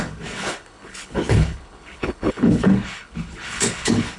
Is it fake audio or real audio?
fake